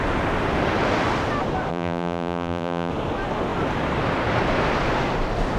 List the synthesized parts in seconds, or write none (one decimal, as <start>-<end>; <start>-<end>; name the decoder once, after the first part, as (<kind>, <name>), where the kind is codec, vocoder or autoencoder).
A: 1.7-2.9 (vocoder, BigVGAN v2)